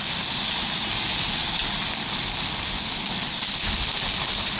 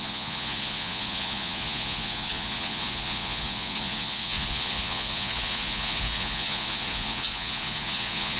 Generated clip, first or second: second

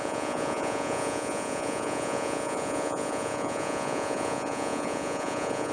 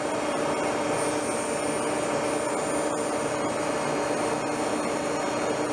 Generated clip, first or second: first